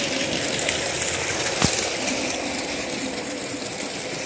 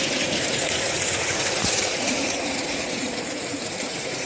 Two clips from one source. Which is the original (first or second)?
first